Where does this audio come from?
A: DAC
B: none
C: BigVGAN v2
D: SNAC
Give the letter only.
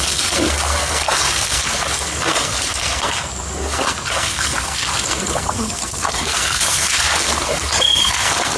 D